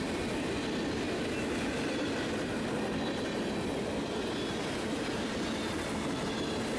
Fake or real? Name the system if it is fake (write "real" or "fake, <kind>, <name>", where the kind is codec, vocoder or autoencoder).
real